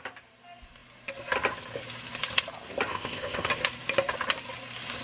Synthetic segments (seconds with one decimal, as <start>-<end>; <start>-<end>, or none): 2.9-3.5